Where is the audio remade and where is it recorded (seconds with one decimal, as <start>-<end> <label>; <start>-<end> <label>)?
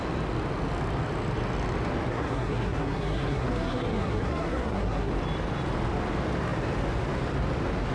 0.0-2.1 recorded; 2.1-5.1 remade; 5.1-7.9 recorded